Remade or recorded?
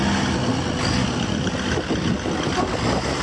recorded